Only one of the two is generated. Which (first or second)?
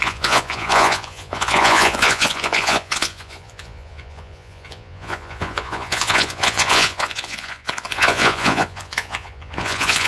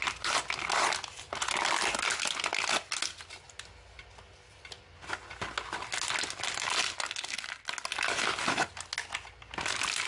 first